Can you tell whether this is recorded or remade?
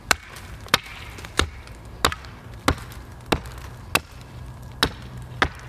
recorded